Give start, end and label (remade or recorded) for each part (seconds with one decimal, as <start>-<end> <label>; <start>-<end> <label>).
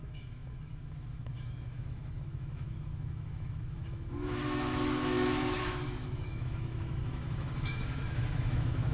0.0-8.9 remade